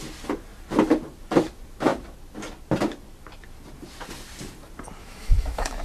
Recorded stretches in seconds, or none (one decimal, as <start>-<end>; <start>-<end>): 0.0-5.0

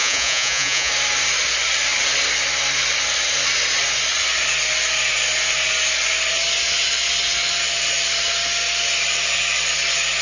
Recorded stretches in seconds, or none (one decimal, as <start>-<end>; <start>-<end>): 0.9-10.2

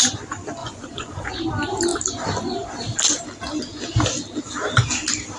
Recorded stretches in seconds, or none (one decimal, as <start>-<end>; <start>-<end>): 0.0-0.6; 1.3-5.4

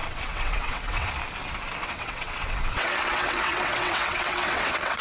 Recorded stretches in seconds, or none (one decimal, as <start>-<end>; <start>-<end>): 1.1-1.8

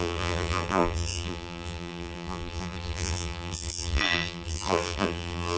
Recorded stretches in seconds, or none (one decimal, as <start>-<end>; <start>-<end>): none